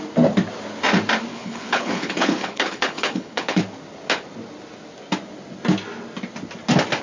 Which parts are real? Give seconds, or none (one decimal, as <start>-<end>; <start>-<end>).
0.0-1.3; 3.6-7.0